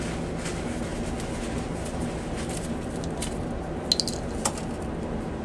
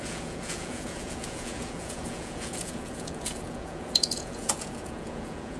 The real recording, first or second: first